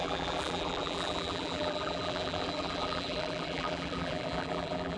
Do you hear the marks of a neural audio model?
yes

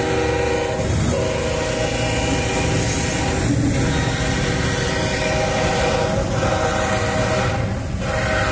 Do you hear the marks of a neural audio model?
no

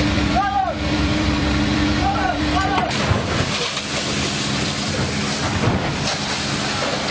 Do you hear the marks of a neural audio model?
yes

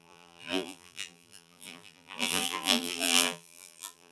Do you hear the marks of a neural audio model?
yes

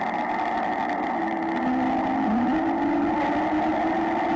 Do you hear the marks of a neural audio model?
no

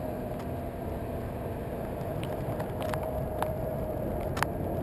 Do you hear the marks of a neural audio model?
no